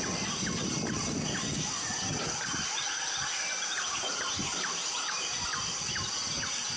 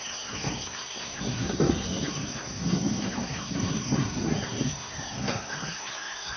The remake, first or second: second